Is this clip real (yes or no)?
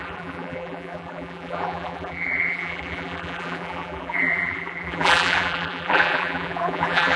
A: no